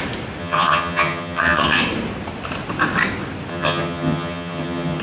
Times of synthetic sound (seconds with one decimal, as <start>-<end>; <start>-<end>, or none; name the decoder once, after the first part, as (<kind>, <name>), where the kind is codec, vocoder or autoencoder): 0.4-1.8 (vocoder, HiFi-GAN); 3.5-5.0